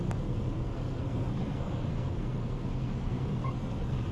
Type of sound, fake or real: fake